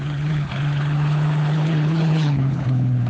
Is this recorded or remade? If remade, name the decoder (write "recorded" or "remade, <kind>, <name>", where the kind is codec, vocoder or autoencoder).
remade, codec, HILCodec